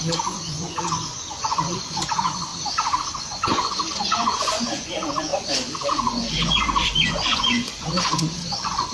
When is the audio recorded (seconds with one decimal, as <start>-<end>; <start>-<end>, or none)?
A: 2.5-3.2; 5.3-5.9